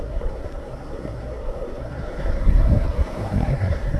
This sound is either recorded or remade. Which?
remade